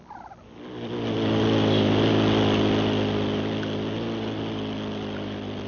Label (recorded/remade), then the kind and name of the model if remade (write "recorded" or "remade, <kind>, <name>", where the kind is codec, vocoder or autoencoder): recorded